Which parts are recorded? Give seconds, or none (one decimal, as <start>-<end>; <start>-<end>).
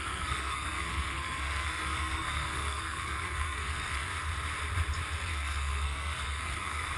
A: 4.1-5.2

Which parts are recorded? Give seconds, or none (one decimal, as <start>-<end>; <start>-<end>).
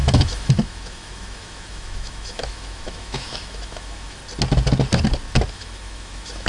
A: 4.2-5.5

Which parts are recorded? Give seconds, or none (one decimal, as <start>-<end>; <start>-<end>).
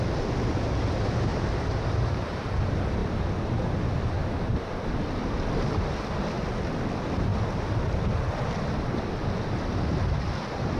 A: 0.0-1.3; 2.5-10.8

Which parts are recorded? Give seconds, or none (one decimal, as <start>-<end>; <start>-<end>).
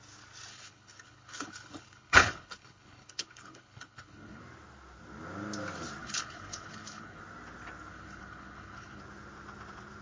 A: 0.0-0.5; 4.4-6.0; 7.2-7.9; 9.0-10.0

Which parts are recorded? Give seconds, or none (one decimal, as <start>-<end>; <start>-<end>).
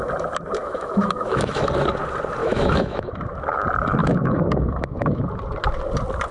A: 0.0-0.6; 1.7-2.4; 3.1-4.0; 5.2-6.3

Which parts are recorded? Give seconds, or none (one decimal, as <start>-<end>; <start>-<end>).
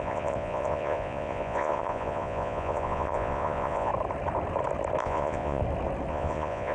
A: 3.9-5.0; 5.6-6.1